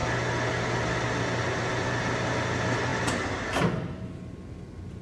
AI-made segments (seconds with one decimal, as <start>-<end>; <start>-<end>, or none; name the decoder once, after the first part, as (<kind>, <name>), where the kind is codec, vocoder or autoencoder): none